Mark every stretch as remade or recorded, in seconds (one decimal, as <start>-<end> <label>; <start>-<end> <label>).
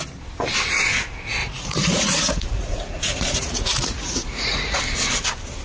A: 0.0-1.4 recorded; 1.4-4.8 remade; 4.8-5.6 recorded